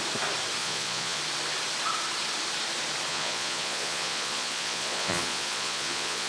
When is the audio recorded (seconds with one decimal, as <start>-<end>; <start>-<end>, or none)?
0.0-0.6; 1.2-3.1